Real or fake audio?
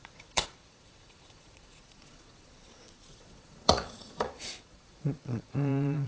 fake